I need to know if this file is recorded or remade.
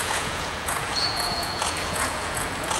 remade